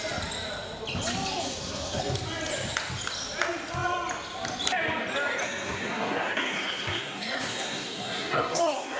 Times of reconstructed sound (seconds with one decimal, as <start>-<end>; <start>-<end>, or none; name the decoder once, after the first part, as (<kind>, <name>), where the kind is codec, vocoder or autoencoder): 1.4-2.0 (codec, SNAC); 5.4-9.0